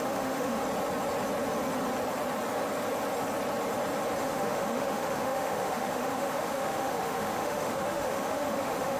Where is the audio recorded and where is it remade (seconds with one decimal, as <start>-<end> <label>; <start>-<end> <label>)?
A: 0.0-0.6 remade; 0.6-4.2 recorded; 4.2-9.0 remade